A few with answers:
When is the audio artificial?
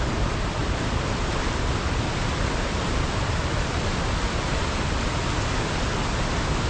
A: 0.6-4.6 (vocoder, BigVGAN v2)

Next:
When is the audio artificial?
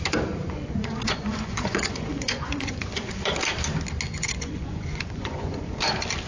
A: 0.4-3.2 (vocoder, Vocos); 4.1-5.8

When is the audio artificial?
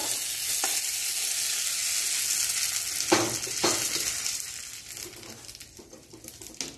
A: none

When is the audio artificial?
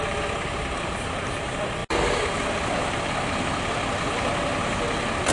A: none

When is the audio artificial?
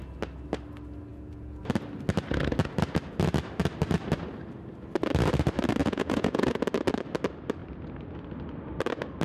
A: 1.1-1.6 (vocoder, Vocos); 5.8-6.6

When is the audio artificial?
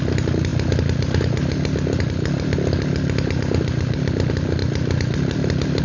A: none